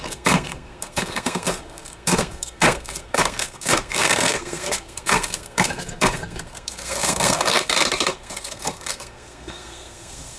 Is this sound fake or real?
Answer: fake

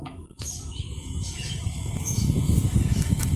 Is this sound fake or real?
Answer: fake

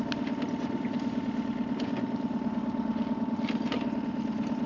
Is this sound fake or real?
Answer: real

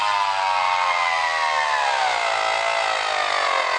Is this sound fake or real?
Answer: real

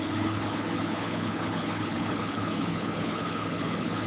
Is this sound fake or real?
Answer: fake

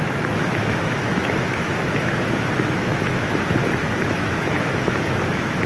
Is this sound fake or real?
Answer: fake